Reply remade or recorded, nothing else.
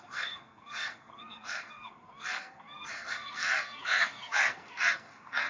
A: remade